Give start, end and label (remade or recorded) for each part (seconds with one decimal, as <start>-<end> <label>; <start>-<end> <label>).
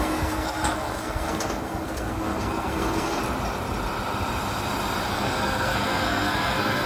0.0-3.2 remade; 3.2-5.1 recorded; 5.1-6.9 remade